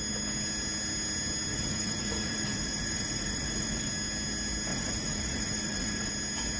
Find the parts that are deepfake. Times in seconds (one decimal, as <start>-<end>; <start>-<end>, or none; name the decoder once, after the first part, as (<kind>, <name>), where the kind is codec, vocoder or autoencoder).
1.5-3.9 (vocoder, Vocos); 4.7-6.1

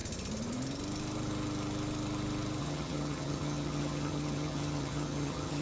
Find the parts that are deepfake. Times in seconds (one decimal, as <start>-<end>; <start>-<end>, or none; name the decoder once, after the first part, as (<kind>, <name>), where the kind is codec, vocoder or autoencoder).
2.6-5.6 (vocoder, HiFi-GAN)

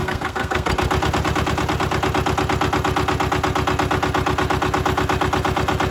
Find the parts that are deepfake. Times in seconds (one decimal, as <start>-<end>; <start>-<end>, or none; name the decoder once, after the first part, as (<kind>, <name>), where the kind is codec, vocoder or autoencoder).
0.0-0.7 (codec, SNAC)

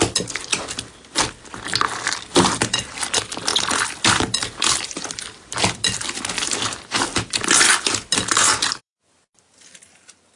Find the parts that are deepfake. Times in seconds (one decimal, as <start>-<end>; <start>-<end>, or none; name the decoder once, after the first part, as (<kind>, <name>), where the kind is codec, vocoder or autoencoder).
3.5-7.3 (vocoder, BigVGAN v2); 8.4-9.2